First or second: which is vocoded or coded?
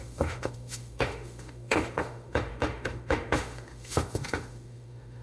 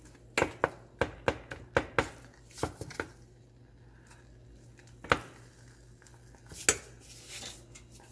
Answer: first